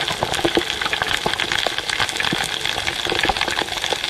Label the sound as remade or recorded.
recorded